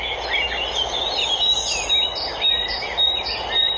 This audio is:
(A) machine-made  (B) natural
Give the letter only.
B